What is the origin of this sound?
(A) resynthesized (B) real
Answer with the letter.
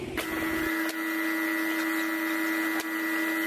B